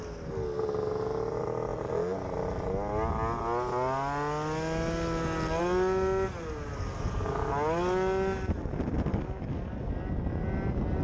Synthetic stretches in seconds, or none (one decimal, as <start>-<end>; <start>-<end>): 6.7-7.5; 9.1-9.9